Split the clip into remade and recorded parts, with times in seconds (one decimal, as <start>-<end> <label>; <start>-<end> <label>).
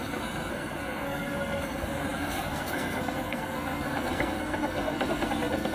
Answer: 0.0-5.7 remade